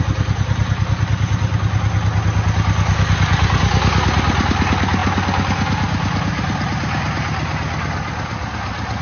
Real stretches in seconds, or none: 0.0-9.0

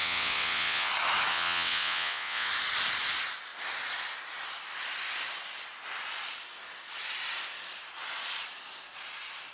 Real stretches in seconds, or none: 0.9-1.3; 2.5-9.5

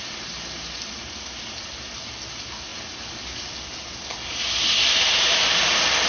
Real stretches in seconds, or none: 0.0-6.1

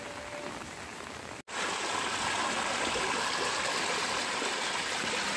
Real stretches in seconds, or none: 0.0-5.4

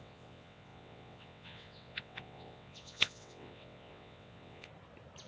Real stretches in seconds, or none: 4.7-5.3

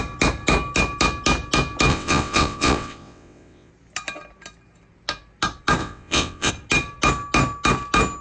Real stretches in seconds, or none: 0.0-1.9; 3.7-5.8; 6.5-8.2